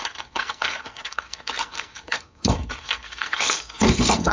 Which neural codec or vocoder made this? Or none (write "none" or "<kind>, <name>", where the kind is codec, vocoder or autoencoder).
codec, SNAC